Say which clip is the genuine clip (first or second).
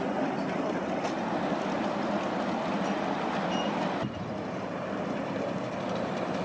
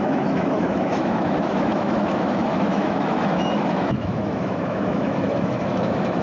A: first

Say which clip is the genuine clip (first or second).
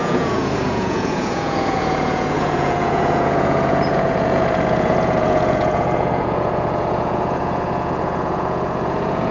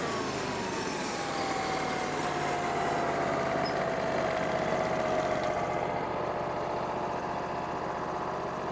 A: second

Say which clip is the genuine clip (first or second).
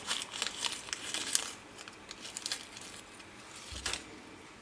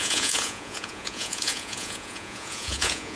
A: first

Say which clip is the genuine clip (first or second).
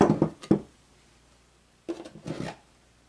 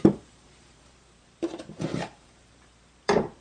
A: first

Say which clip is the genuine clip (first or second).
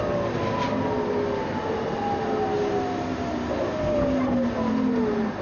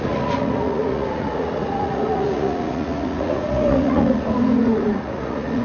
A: first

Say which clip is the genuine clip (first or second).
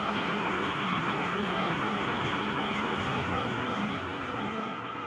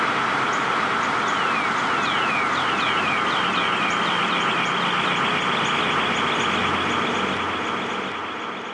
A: second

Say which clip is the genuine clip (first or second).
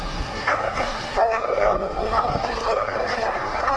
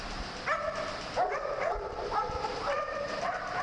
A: second